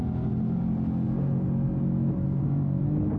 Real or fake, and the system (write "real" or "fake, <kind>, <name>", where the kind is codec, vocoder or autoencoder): real